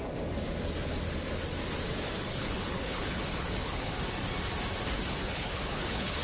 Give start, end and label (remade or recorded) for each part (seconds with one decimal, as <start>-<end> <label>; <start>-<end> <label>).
0.0-2.3 recorded; 2.3-3.9 remade; 3.9-5.2 recorded; 5.2-6.2 remade